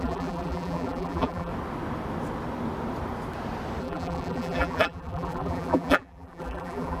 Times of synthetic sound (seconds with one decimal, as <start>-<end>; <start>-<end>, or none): 0.0-1.5; 3.8-7.0